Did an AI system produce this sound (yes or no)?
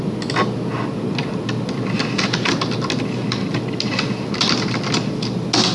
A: no